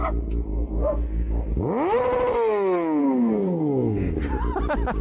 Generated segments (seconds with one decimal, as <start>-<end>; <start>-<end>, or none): 0.5-1.3; 3.0-4.1